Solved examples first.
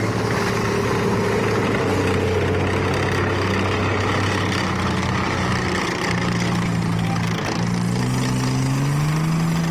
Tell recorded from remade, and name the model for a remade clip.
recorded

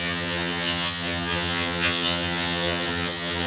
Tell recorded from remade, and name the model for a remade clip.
remade, vocoder, HiFi-GAN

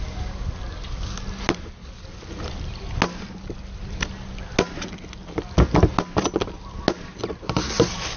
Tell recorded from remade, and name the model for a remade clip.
recorded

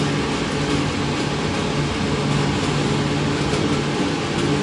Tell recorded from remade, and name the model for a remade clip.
recorded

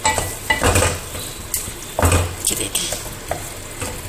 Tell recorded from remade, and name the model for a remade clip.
recorded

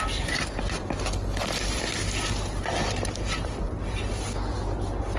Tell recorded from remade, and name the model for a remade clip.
recorded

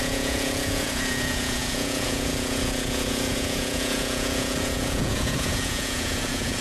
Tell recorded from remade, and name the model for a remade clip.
remade, vocoder, Vocos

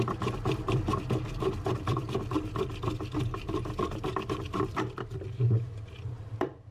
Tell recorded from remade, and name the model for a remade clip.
remade, vocoder, BigVGAN v2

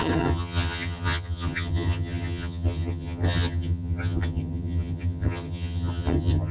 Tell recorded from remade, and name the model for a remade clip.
remade, vocoder, HiFi-GAN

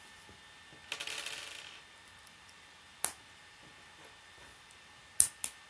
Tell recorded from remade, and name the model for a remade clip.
recorded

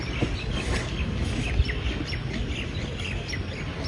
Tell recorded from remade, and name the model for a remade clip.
recorded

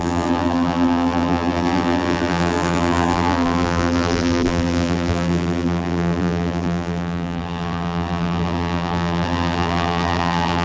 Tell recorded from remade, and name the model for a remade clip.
remade, vocoder, BigVGAN v2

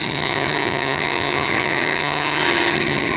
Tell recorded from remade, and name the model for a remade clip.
remade, vocoder, HiFi-GAN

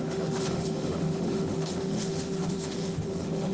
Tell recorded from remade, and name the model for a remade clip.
remade, autoencoder, DAC-VAE